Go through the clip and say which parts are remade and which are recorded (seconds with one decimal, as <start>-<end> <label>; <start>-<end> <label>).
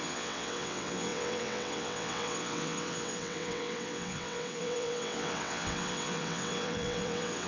0.0-7.5 remade